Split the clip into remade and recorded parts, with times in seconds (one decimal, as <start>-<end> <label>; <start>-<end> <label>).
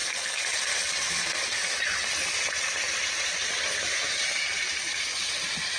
0.0-2.2 recorded; 2.2-5.8 remade